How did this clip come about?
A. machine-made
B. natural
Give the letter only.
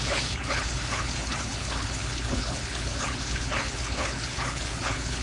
A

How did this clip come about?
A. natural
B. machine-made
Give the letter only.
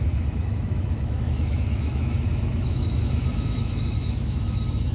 B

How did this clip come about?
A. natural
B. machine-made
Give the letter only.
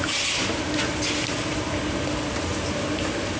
A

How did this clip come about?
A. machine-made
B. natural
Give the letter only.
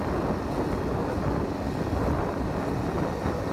B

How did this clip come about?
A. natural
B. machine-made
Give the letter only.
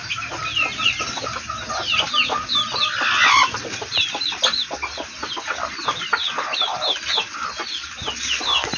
A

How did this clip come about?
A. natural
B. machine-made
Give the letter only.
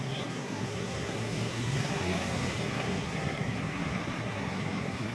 B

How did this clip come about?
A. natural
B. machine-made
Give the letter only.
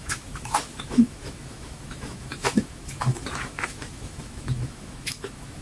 B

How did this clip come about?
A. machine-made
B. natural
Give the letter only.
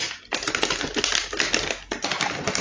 B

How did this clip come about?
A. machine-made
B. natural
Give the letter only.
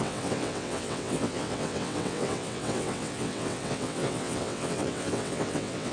A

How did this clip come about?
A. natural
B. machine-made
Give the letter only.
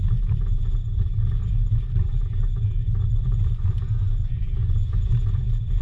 B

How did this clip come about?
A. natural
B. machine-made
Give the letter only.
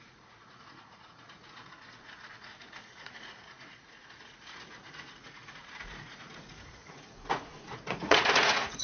B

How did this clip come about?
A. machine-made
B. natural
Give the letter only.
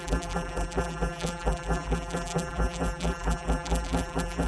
A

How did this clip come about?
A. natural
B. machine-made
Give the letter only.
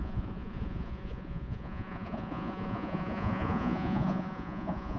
B